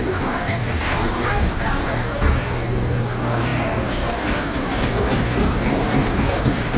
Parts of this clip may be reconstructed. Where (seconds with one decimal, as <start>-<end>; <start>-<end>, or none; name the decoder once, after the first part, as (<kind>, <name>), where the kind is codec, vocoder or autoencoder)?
0.0-6.8 (codec, DAC)